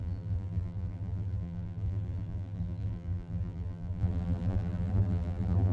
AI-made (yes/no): yes